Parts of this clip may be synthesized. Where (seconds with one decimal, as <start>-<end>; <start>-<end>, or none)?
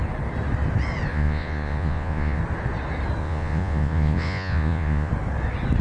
1.1-2.4; 3.2-5.1